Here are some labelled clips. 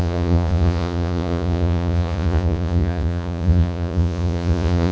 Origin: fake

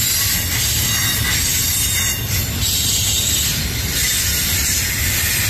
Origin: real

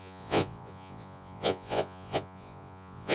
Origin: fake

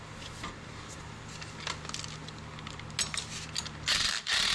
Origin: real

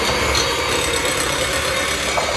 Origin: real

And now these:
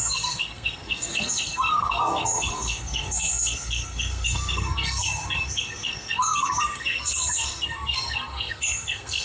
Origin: fake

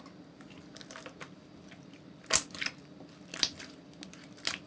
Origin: real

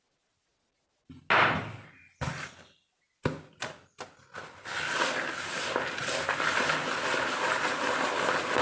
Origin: real